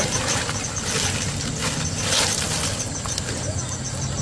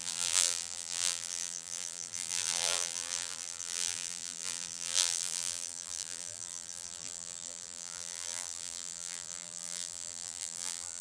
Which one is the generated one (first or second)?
second